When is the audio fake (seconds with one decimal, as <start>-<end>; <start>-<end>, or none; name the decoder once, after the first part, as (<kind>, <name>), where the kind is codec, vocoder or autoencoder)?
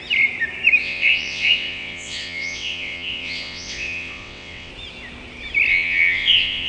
0.8-4.7 (vocoder, WaveNeXt); 5.7-6.7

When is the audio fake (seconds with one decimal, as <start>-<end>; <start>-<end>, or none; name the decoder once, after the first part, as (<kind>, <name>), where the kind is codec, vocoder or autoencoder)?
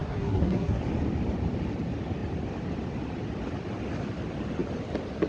0.0-0.8 (codec, SNAC)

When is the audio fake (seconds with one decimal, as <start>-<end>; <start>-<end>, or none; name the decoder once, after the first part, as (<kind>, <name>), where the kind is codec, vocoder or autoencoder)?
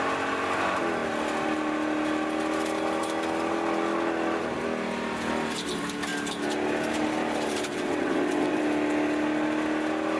7.7-8.6 (vocoder, WaveNeXt)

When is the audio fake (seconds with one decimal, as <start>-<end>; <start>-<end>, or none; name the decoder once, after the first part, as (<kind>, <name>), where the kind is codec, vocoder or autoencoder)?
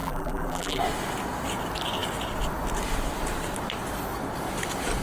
0.0-0.8 (vocoder, BigVGAN v2)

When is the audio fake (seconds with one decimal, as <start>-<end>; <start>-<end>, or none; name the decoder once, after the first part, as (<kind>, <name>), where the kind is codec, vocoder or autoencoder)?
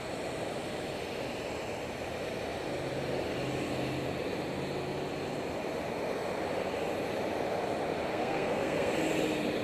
8.1-8.9 (codec, SNAC)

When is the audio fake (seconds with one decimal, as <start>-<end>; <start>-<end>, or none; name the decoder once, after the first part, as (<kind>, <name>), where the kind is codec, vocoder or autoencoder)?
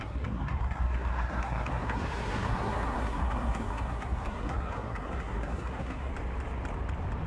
0.0-6.1 (codec, SNAC)